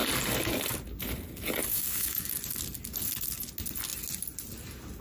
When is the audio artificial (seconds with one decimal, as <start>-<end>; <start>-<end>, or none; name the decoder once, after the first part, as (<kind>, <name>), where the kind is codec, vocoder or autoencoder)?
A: 1.7-2.3 (autoencoder, DAC-VAE)